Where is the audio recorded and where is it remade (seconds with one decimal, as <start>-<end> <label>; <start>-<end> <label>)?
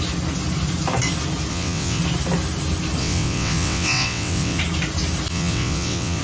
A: 0.0-1.5 recorded; 1.5-2.0 remade; 2.0-3.0 recorded; 3.0-4.6 remade; 4.6-5.3 recorded; 5.3-6.2 remade